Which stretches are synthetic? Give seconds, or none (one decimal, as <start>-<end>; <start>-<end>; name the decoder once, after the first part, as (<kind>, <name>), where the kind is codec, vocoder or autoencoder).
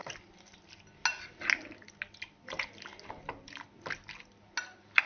none